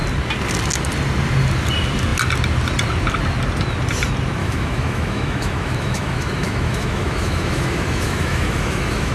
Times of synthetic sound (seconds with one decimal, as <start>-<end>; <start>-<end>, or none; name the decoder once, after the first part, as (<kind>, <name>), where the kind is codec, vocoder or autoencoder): 4.4-9.1 (autoencoder, DAC-VAE)

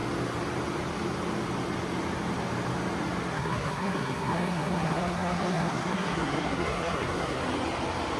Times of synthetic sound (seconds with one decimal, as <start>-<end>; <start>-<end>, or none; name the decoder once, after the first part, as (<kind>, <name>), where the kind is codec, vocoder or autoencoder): 3.3-7.4 (codec, SNAC)

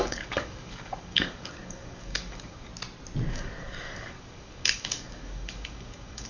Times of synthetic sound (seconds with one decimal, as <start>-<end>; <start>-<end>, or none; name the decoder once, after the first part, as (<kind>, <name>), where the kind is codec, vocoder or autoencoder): 0.0-2.7 (codec, DAC); 3.3-6.3

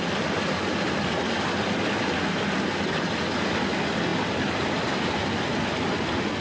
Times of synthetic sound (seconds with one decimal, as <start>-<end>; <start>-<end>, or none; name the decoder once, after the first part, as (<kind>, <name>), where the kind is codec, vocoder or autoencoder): none

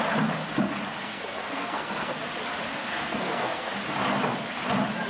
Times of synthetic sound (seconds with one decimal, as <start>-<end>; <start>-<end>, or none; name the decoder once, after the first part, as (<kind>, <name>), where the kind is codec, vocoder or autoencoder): 1.0-2.2 (codec, SNAC); 2.8-3.7

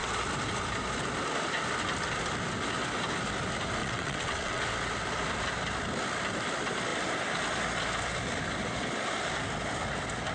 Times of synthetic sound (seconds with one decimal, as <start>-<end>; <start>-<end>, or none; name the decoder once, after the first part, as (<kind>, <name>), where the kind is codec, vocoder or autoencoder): 3.8-4.6 (vocoder, WaveNeXt)